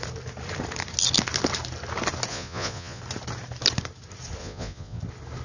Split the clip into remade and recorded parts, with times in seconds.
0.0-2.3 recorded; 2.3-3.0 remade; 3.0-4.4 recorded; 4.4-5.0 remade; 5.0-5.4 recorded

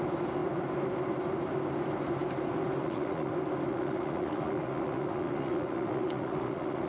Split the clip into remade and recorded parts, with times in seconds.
0.0-2.8 recorded; 2.8-3.3 remade; 3.3-3.7 recorded; 3.7-6.9 remade

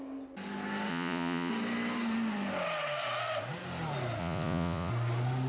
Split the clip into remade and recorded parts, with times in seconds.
0.0-0.9 recorded; 0.9-1.5 remade; 1.5-4.2 recorded; 4.2-4.9 remade; 4.9-5.5 recorded

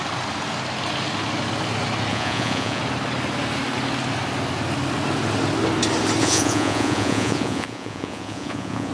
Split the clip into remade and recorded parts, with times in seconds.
0.0-2.1 recorded; 2.1-2.8 remade; 2.8-6.2 recorded; 6.2-8.9 remade

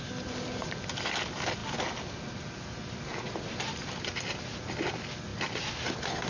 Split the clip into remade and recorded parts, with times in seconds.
0.0-6.3 recorded

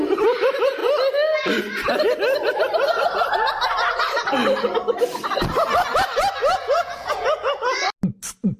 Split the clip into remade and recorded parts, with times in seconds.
0.0-6.4 recorded; 6.4-7.5 remade; 7.5-8.6 recorded

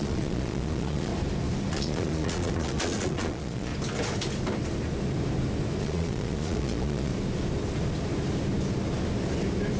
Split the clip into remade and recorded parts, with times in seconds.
0.0-1.1 remade; 1.1-1.7 recorded; 1.7-3.7 remade; 3.7-5.8 recorded; 5.8-7.1 remade; 7.1-9.8 recorded

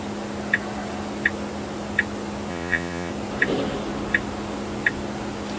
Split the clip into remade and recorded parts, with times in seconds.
0.0-2.5 recorded; 2.5-3.1 remade; 3.1-5.6 recorded